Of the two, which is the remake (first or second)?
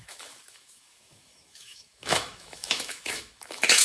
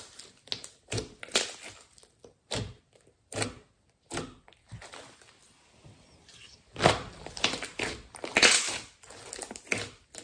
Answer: first